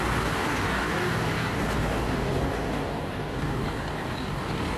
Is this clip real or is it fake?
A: fake